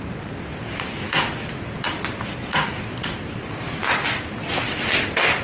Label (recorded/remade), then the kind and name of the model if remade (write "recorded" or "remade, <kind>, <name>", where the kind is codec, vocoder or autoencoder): recorded